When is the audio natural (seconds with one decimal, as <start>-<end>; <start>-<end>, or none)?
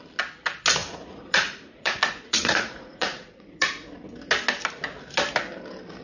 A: 0.0-0.8; 4.0-6.0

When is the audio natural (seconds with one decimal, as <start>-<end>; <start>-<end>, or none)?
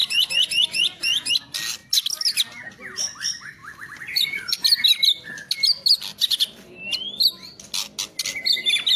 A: 1.3-9.0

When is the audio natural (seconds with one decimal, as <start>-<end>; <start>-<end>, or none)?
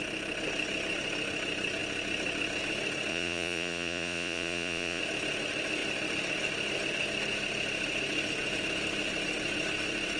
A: 0.0-3.1; 5.0-10.2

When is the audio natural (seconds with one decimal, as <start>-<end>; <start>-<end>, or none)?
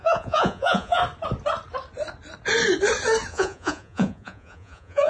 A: 1.0-3.3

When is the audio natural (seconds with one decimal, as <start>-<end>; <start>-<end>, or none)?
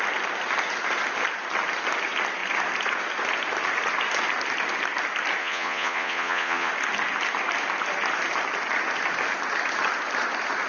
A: 0.0-5.4; 6.7-10.7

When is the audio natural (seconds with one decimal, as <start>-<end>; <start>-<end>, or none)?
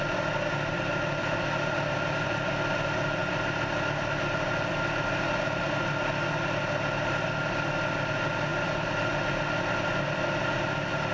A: 0.0-11.1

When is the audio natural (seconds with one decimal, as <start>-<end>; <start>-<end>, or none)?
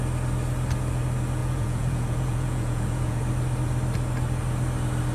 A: 0.0-1.4; 3.2-5.1